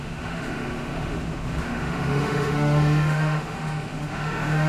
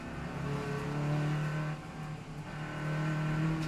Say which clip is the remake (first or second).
first